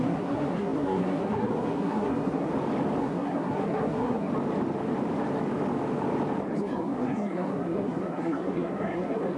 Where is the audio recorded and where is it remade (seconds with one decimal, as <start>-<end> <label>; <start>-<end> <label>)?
0.0-2.5 remade; 2.5-3.0 recorded; 3.0-4.3 remade; 4.3-6.6 recorded; 6.6-9.4 remade